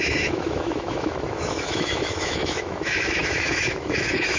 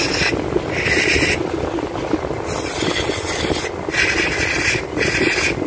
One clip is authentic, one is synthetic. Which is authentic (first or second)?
second